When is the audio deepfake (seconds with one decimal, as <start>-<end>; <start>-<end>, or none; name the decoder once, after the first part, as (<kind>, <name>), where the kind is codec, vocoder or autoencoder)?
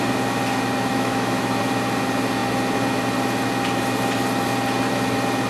0.9-1.6 (autoencoder, DAC-VAE)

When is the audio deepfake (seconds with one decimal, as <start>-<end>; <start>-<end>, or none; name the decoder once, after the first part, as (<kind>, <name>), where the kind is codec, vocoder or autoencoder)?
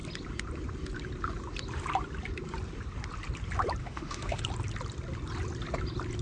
3.8-4.4 (autoencoder, DAC-VAE)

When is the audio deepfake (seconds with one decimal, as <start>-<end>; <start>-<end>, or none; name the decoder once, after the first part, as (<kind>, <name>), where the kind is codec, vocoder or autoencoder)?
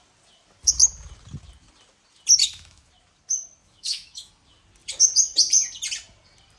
2.4-2.9 (autoencoder, DAC-VAE); 3.6-4.3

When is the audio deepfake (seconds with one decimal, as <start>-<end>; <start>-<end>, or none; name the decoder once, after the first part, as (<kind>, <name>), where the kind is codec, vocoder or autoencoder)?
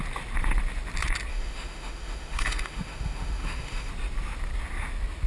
1.3-3.9 (autoencoder, DAC-VAE)